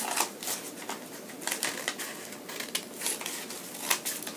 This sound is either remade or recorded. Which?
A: recorded